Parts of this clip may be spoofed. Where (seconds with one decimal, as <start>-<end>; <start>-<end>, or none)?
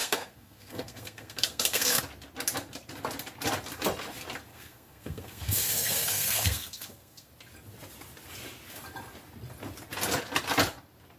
0.0-2.0; 4.5-7.3